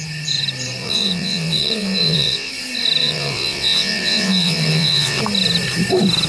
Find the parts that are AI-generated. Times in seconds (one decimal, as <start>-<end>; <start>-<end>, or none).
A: 0.8-2.5; 3.0-5.2